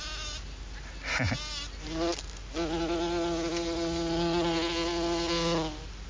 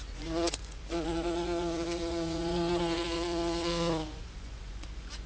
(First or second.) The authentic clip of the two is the first